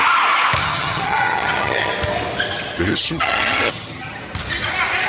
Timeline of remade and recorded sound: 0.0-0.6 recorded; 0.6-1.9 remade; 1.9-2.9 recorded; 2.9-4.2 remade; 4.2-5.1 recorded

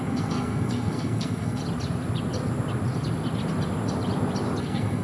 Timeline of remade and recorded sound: 0.0-1.6 remade; 1.6-4.6 recorded; 4.6-5.0 remade

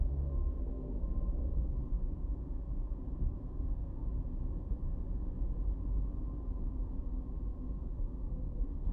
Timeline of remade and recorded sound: 0.0-1.8 remade; 1.8-3.4 recorded; 3.4-4.1 remade; 4.1-7.8 recorded; 7.8-8.9 remade

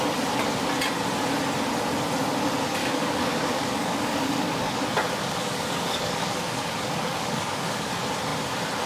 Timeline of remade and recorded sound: 0.0-2.8 recorded; 2.8-4.8 remade; 4.8-5.2 recorded; 5.2-7.9 remade; 7.9-8.9 recorded

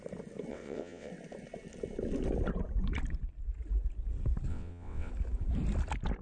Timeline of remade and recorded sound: 0.0-0.5 recorded; 0.5-1.1 remade; 1.1-4.5 recorded; 4.5-5.1 remade; 5.1-6.2 recorded

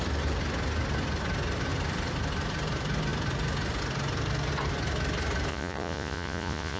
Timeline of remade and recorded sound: 0.0-5.5 recorded; 5.5-6.8 remade

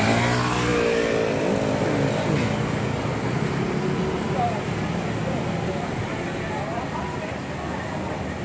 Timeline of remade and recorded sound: 0.0-8.4 recorded